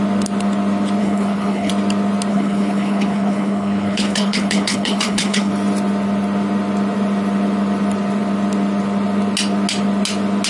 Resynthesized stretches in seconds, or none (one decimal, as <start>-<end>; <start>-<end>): 1.0-1.7; 2.3-5.5